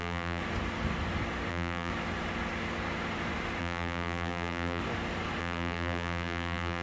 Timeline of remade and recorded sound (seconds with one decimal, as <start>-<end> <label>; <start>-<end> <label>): 0.0-0.4 remade; 0.4-1.5 recorded; 1.5-1.9 remade; 1.9-3.6 recorded; 3.6-4.8 remade; 4.8-5.4 recorded; 5.4-6.8 remade

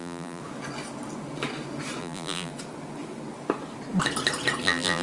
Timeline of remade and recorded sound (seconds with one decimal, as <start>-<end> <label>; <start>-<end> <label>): 0.0-0.4 remade; 0.4-2.0 recorded; 2.0-2.5 remade; 2.5-4.6 recorded; 4.6-5.0 remade

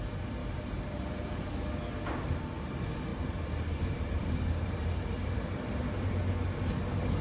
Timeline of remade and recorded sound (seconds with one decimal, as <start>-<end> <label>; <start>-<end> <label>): 0.0-0.4 recorded; 0.4-1.7 remade; 1.7-3.1 recorded; 3.1-6.1 remade; 6.1-7.2 recorded

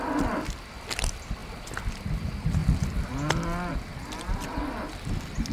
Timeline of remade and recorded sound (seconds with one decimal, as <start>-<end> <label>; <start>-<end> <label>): 0.0-5.5 recorded

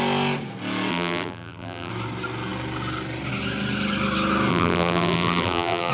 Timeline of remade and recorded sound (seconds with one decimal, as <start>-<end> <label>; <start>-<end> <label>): 0.0-0.9 recorded; 0.9-1.9 remade; 1.9-4.5 recorded; 4.5-5.9 remade

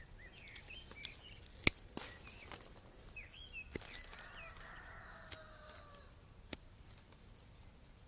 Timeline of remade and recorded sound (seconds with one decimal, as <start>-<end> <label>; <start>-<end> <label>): 0.0-8.1 recorded

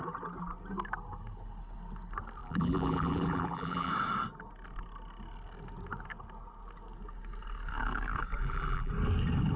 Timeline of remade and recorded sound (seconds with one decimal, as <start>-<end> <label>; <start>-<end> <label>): 0.0-2.4 recorded; 2.4-3.9 remade; 3.9-8.4 recorded; 8.4-8.9 remade; 8.9-9.6 recorded

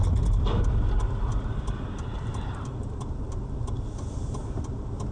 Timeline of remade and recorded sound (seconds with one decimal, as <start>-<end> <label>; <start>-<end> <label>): 0.0-1.3 recorded; 1.3-4.4 remade; 4.4-5.1 recorded